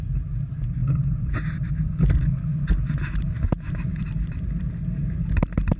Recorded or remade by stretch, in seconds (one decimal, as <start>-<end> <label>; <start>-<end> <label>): 0.0-5.8 recorded